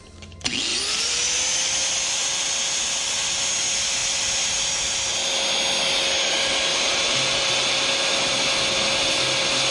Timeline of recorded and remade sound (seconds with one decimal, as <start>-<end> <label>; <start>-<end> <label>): 0.0-0.7 recorded; 0.7-1.4 remade; 1.4-6.7 recorded; 6.7-7.9 remade; 7.9-9.7 recorded